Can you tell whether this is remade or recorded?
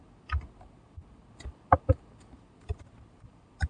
recorded